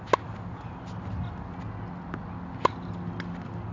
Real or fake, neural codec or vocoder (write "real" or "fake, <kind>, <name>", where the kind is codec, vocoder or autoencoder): real